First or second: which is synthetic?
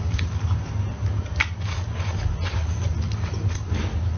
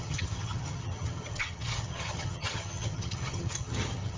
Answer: second